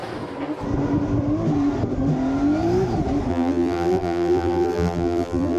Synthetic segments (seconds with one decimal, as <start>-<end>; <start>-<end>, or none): 3.3-5.6